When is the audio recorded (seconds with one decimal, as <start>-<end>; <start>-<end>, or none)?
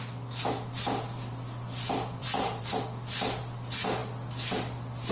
0.0-2.2; 2.7-5.1